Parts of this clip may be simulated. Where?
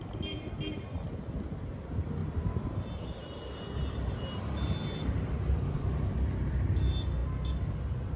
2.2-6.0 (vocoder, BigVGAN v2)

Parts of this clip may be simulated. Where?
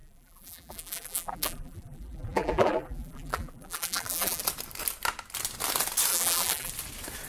0.0-4.4 (vocoder, BigVGAN v2); 6.1-6.7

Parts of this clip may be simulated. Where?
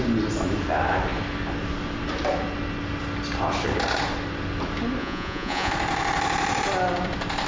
5.0-5.7 (vocoder, Vocos)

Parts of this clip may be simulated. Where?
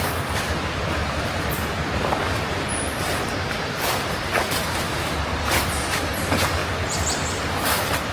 0.0-6.6 (vocoder, BigVGAN v2)